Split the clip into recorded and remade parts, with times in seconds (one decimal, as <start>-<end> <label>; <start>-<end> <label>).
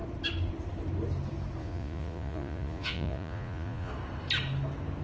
0.0-1.6 recorded; 1.6-3.9 remade; 3.9-5.0 recorded